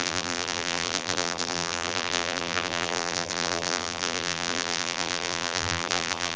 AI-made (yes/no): yes